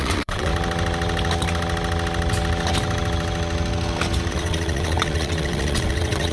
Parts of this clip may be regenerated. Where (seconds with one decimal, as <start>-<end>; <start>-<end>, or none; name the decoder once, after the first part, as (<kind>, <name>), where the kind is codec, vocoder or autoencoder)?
0.0-0.5 (vocoder, WaveNeXt); 4.3-6.3